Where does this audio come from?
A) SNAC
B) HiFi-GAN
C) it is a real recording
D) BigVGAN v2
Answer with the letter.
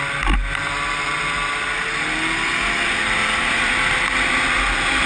C